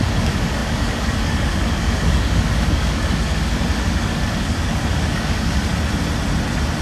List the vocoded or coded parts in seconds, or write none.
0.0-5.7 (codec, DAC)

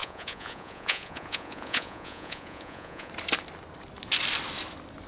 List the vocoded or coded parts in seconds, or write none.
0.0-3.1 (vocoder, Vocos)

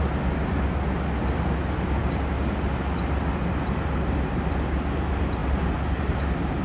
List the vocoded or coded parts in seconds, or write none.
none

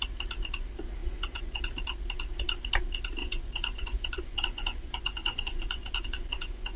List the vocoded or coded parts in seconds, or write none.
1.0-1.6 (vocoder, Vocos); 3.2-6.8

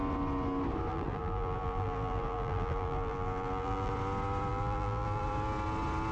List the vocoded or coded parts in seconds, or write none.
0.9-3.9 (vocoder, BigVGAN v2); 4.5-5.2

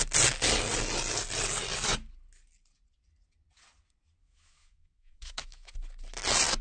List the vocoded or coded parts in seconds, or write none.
4.2-5.7 (autoencoder, DAC-VAE)